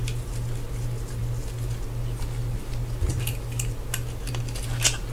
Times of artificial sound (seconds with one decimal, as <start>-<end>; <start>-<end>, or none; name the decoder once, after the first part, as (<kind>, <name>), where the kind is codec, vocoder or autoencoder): none